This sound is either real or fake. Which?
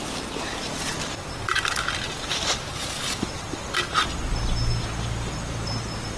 real